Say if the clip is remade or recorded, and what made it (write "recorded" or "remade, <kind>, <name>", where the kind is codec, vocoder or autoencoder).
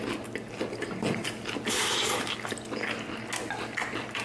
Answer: recorded